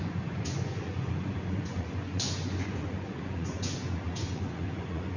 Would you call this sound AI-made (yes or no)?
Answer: yes